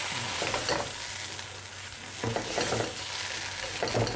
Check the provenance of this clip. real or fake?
real